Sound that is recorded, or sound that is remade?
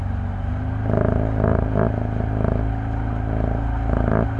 recorded